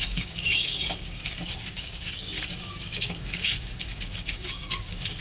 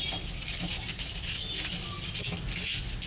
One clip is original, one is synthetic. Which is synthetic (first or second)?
first